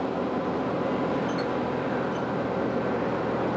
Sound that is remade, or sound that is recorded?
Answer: recorded